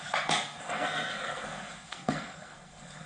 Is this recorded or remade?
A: remade